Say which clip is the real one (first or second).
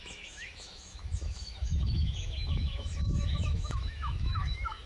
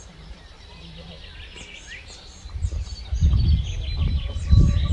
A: second